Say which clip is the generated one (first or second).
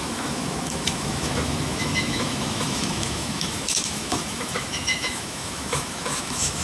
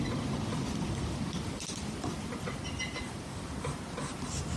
first